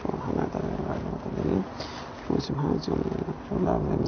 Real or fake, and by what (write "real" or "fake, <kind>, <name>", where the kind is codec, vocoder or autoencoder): real